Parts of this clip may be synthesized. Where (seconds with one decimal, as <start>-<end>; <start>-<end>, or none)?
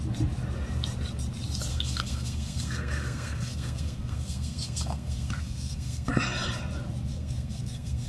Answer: 1.7-6.1; 7.1-8.1